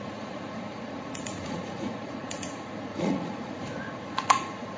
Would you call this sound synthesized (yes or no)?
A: yes